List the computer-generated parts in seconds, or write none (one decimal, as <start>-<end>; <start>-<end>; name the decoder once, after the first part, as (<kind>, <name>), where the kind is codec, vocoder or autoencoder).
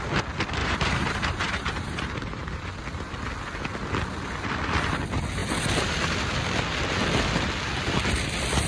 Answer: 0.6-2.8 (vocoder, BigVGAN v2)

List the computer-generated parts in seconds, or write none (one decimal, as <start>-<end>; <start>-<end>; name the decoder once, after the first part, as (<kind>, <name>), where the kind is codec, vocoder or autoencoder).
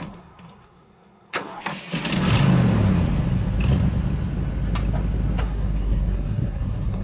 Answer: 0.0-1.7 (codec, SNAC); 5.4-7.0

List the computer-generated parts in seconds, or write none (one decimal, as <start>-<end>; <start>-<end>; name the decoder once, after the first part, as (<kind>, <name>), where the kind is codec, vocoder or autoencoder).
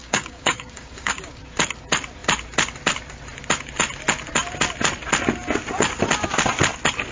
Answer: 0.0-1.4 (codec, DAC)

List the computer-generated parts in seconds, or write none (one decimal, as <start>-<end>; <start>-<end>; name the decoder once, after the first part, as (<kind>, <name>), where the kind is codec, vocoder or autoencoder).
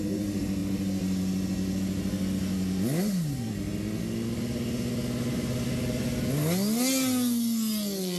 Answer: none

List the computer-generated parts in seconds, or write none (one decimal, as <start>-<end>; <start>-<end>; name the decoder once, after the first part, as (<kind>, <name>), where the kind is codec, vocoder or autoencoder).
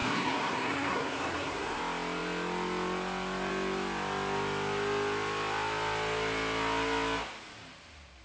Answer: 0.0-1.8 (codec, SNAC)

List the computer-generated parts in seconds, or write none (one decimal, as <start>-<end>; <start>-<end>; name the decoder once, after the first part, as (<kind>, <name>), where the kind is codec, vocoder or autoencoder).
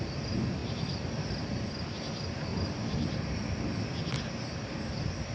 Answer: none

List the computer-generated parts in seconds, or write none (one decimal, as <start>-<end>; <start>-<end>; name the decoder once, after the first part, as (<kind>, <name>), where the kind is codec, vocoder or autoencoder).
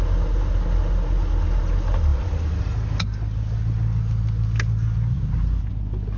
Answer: none